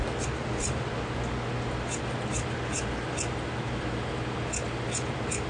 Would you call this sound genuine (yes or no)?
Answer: yes